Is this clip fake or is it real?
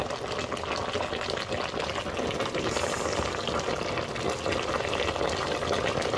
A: real